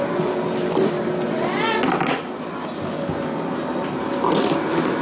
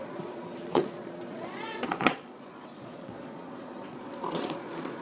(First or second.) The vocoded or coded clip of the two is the second